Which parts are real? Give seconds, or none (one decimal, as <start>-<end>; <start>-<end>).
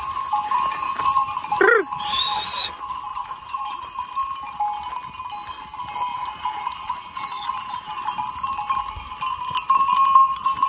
0.0-3.1; 3.8-6.1; 7.9-10.7